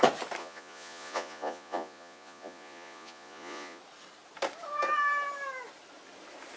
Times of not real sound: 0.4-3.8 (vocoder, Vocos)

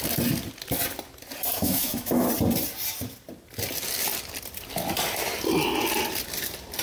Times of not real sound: 1.5-2.3 (autoencoder, DAC-VAE)

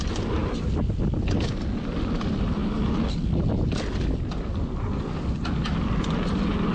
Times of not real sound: none

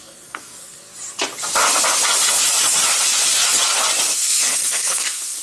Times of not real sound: 0.0-0.9 (codec, SNAC); 4.1-5.4